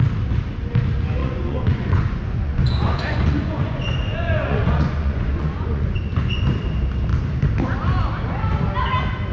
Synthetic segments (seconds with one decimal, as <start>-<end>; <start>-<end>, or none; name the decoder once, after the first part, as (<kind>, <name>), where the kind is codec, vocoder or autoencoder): 1.2-6.4 (vocoder, Vocos)